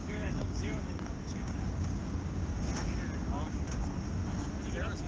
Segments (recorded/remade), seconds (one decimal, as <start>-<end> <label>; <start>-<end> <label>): 0.0-2.6 remade; 2.6-5.1 recorded